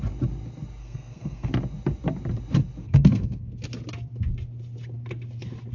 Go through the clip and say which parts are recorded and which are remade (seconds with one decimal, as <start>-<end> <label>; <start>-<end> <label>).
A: 0.0-0.8 recorded; 0.8-1.5 remade; 1.5-2.8 recorded; 2.8-3.5 remade; 3.5-5.7 recorded